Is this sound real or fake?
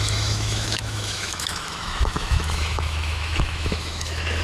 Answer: fake